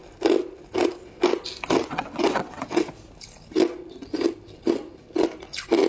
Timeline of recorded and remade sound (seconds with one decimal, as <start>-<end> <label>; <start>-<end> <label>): 0.0-1.8 recorded; 1.8-2.9 remade; 2.9-5.9 recorded

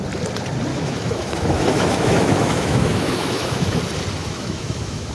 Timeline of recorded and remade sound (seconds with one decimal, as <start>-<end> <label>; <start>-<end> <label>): 0.0-0.7 recorded; 0.7-3.8 remade; 3.8-4.2 recorded; 4.2-5.1 remade

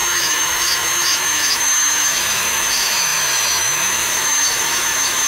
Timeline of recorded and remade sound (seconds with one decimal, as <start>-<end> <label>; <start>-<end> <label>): 0.0-5.3 remade

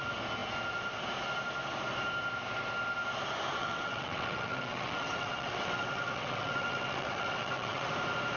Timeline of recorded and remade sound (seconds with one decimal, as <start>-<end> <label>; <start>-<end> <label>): 0.0-3.5 recorded; 3.5-7.9 remade; 7.9-8.4 recorded

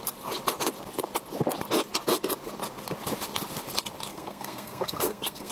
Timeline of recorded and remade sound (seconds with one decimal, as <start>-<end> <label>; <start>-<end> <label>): 0.0-4.1 recorded; 4.1-5.5 remade

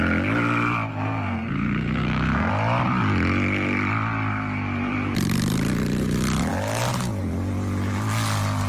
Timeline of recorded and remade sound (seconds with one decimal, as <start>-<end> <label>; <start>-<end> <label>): 0.0-0.9 recorded; 0.9-2.5 remade; 2.5-8.7 recorded